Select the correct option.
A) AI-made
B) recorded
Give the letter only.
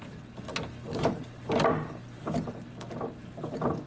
B